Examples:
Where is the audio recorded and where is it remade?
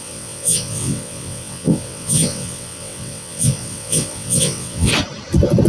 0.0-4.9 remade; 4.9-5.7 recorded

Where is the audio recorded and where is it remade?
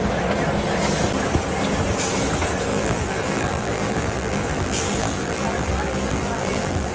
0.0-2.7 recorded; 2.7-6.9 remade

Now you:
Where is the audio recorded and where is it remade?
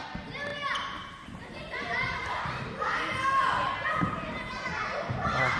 0.0-0.5 recorded; 0.5-2.6 remade; 2.6-5.6 recorded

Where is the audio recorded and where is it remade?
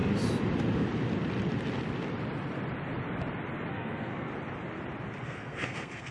0.0-3.7 recorded; 3.7-4.3 remade; 4.3-5.2 recorded; 5.2-6.1 remade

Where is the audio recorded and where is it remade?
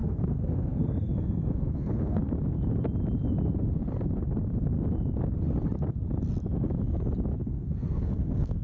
0.0-2.2 remade; 2.2-7.4 recorded; 7.4-8.6 remade